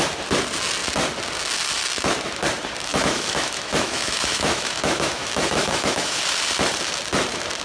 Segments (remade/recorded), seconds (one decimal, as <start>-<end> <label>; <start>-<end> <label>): 0.0-2.9 recorded; 2.9-6.2 remade; 6.2-7.6 recorded